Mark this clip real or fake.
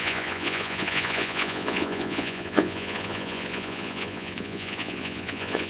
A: fake